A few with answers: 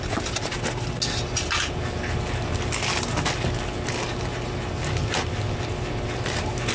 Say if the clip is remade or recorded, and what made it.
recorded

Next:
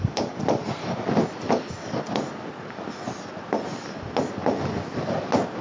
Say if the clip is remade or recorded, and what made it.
recorded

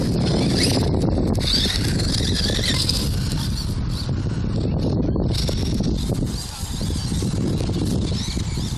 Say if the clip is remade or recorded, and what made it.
recorded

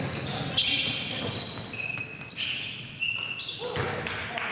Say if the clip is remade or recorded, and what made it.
recorded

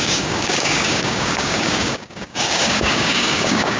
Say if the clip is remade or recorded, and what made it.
remade, codec, DAC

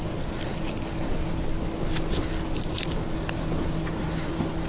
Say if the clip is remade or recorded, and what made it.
recorded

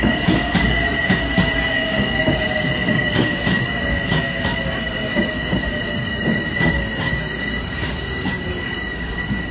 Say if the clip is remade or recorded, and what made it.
remade, codec, DAC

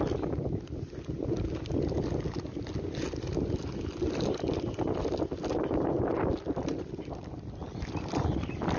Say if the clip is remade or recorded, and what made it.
recorded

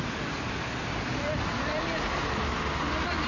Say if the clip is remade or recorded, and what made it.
recorded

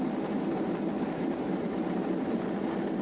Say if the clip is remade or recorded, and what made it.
recorded